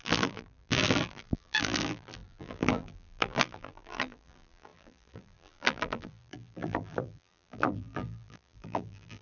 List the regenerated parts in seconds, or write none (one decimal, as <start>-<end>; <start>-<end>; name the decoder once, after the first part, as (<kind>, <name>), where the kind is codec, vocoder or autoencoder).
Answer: 0.0-9.2 (vocoder, BigVGAN v2)